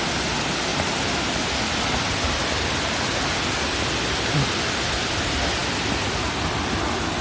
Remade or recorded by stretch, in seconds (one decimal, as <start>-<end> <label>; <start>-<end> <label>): 0.0-7.2 recorded